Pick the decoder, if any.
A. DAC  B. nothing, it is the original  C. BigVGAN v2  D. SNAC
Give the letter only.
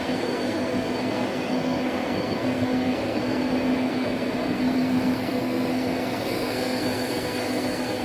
D